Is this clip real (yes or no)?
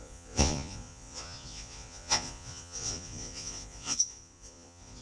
no